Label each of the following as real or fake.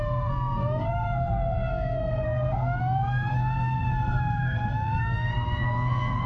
fake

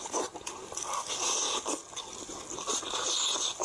real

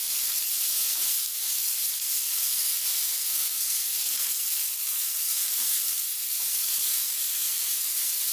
fake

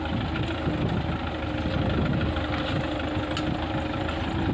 real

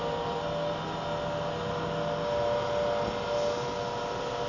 real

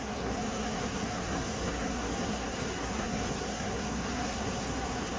fake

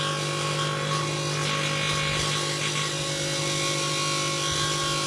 real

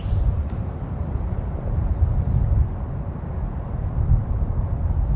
real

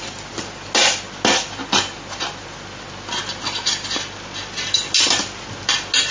real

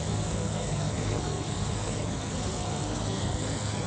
fake